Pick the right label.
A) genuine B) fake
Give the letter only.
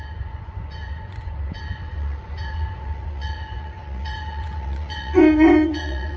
B